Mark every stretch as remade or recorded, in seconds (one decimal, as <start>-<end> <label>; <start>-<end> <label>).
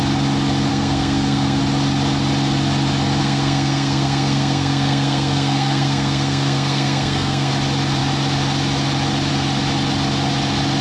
0.0-0.7 recorded; 0.7-1.6 remade; 1.6-3.2 recorded; 3.2-7.5 remade; 7.5-10.8 recorded